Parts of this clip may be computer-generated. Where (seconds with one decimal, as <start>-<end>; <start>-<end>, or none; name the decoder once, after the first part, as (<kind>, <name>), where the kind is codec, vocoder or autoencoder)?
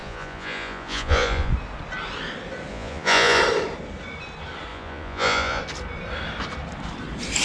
0.0-1.5 (vocoder, Vocos); 2.7-3.4; 4.7-5.6